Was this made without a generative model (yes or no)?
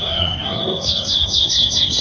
no